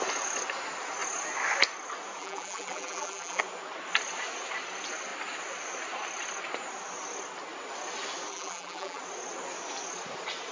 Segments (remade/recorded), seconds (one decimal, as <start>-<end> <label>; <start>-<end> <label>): 0.0-2.2 recorded; 2.2-3.4 remade; 3.4-8.3 recorded; 8.3-9.0 remade; 9.0-10.5 recorded

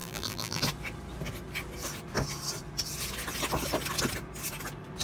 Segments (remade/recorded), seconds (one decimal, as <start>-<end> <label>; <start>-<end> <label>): 0.0-0.6 remade; 0.6-5.0 recorded

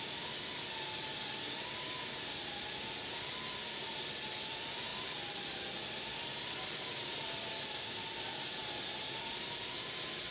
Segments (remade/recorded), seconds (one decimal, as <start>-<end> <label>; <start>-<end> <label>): 0.0-4.9 recorded; 4.9-5.8 remade; 5.8-8.6 recorded; 8.6-9.5 remade; 9.5-10.3 recorded

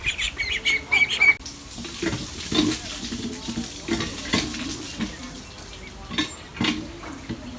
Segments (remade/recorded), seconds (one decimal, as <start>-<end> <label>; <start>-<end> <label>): 0.0-7.6 recorded

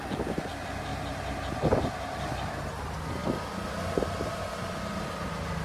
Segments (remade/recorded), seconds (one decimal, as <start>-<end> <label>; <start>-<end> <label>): 0.0-0.9 recorded; 0.9-2.6 remade; 2.6-3.2 recorded; 3.2-4.4 remade; 4.4-5.6 recorded

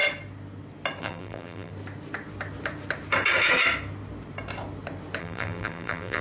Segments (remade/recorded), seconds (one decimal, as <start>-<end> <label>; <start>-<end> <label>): 0.0-1.0 recorded; 1.0-1.7 remade; 1.7-5.2 recorded; 5.2-6.2 remade

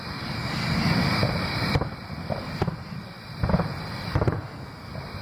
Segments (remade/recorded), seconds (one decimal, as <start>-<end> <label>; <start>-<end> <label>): 0.0-1.2 recorded; 1.2-4.3 remade; 4.3-5.2 recorded